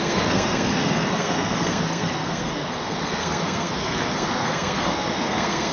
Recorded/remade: remade